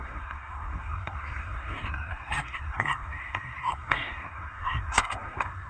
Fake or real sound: fake